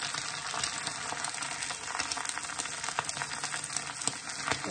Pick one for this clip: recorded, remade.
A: recorded